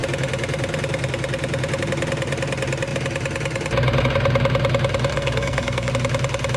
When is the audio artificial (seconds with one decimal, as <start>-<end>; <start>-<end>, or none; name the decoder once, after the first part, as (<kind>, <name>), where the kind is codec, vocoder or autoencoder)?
5.1-5.9 (codec, SNAC)